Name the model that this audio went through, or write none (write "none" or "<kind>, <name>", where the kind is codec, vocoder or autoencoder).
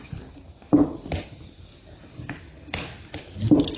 none